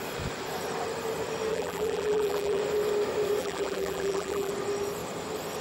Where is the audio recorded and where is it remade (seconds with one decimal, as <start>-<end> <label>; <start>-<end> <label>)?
0.0-1.5 recorded; 1.5-2.6 remade; 2.6-3.4 recorded; 3.4-4.5 remade; 4.5-5.6 recorded